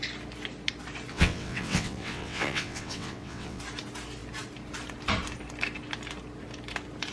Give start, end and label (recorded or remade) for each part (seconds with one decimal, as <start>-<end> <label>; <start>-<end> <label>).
0.0-1.1 recorded; 1.1-3.6 remade; 3.6-7.1 recorded